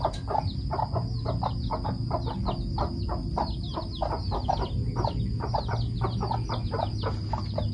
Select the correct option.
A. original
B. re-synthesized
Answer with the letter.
A